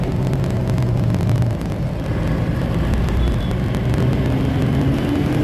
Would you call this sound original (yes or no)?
yes